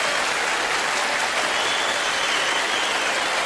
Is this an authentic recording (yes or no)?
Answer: yes